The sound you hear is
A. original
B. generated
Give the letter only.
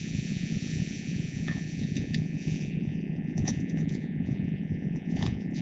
B